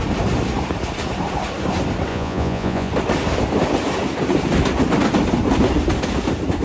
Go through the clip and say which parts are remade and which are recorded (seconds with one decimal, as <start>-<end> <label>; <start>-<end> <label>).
0.0-2.1 recorded; 2.1-2.9 remade; 2.9-6.6 recorded